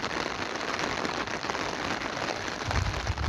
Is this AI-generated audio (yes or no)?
no